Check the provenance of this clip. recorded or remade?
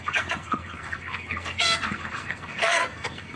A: remade